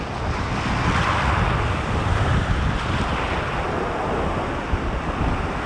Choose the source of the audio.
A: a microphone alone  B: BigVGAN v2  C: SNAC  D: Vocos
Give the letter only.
A